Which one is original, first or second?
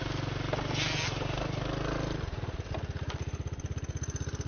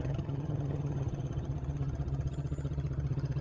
first